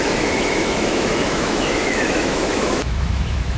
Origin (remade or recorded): remade